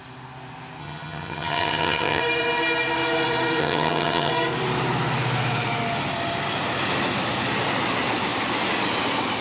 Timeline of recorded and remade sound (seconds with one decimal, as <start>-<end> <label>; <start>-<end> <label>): 0.0-0.8 recorded; 0.8-2.2 remade; 2.2-3.6 recorded; 3.6-4.3 remade; 4.3-9.4 recorded